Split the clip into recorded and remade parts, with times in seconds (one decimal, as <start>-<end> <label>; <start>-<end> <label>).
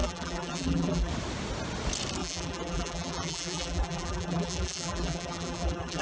0.0-1.1 remade; 1.1-2.2 recorded; 2.2-6.0 remade